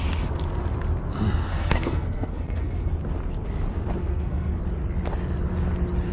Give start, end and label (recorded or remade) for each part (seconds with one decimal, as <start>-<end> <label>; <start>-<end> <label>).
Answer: 0.0-1.5 recorded; 1.5-2.9 remade; 2.9-4.0 recorded; 4.0-4.6 remade; 4.6-6.1 recorded